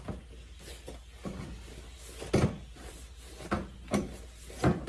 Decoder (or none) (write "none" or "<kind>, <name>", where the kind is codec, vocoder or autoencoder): none